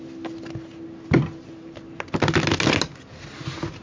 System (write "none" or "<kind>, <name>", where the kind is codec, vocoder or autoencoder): none